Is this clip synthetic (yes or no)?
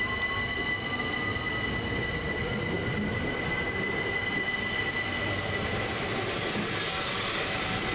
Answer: no